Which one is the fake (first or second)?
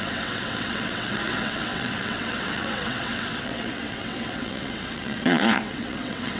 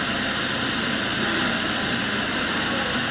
first